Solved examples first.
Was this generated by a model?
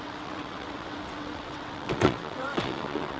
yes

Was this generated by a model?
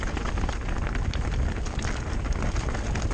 no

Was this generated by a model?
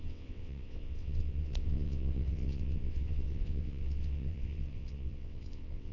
yes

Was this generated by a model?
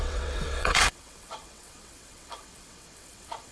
yes